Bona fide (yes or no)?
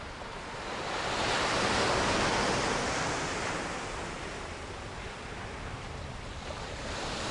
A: no